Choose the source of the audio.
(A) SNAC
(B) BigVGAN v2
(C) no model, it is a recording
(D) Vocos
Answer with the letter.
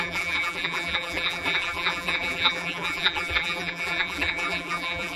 B